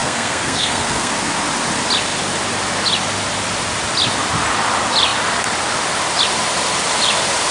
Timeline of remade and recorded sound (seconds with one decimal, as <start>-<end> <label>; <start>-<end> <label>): 0.0-1.1 remade; 1.1-7.5 recorded